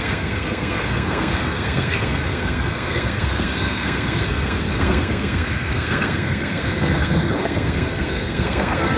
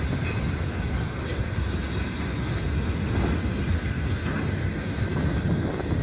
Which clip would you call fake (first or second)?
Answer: first